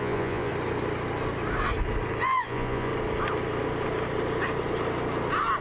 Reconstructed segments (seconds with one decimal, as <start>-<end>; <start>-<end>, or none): 0.0-0.5; 2.2-2.9